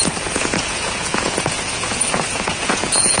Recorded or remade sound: remade